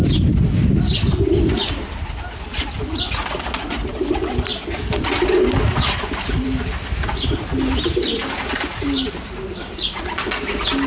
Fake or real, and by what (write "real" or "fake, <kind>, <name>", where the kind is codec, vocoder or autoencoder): real